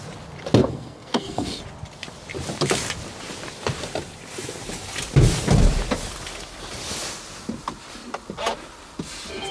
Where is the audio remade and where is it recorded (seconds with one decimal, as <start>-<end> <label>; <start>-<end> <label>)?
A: 0.0-0.6 recorded; 0.6-1.6 remade; 1.6-9.5 recorded